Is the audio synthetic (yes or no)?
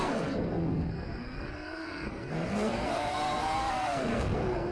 yes